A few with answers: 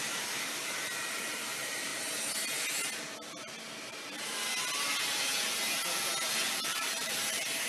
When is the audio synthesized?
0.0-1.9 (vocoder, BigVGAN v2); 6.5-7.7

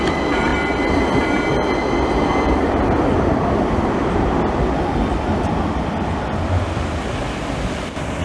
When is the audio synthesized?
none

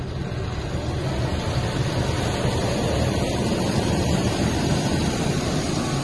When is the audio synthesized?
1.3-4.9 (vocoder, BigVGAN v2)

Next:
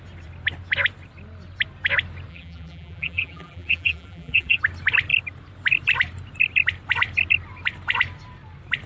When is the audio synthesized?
2.3-4.6 (vocoder, BigVGAN v2)

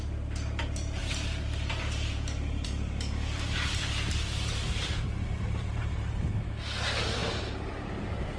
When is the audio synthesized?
1.0-6.0 (vocoder, BigVGAN v2)